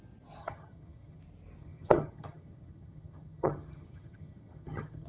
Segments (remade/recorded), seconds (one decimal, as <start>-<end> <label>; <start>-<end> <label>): 0.0-0.4 recorded; 0.4-1.2 remade; 1.2-1.6 recorded; 1.6-5.1 remade